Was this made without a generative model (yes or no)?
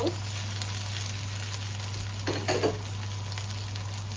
yes